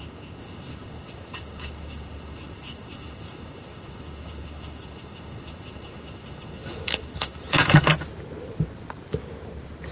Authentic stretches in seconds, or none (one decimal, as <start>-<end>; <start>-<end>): 7.9-9.9